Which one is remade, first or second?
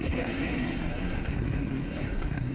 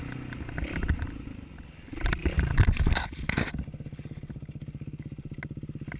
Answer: first